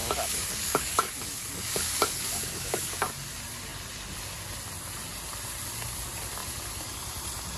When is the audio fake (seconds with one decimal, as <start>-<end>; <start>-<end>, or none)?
0.0-3.1